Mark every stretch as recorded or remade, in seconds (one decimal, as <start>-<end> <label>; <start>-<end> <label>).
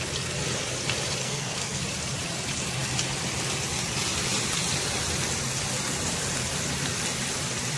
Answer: 0.0-1.2 recorded; 1.2-1.8 remade; 1.8-7.8 recorded